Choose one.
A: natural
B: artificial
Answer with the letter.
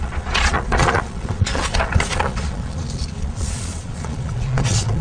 B